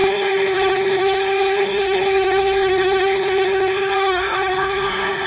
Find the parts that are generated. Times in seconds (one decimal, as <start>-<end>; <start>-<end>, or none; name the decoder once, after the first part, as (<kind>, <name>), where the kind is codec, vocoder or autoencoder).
0.0-5.3 (codec, SNAC)